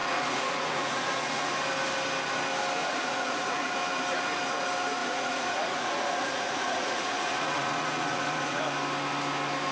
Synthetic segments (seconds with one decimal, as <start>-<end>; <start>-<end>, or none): 0.0-1.5; 2.8-3.7; 5.0-8.6